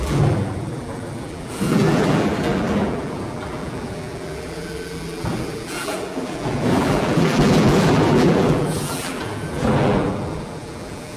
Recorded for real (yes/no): no